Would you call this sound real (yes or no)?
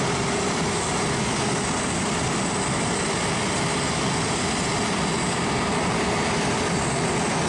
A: yes